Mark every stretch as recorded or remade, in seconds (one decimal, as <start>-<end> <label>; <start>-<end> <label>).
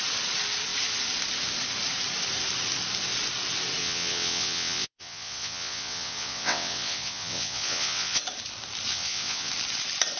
0.0-3.8 recorded; 3.8-8.2 remade; 8.2-8.9 recorded; 8.9-9.5 remade; 9.5-10.2 recorded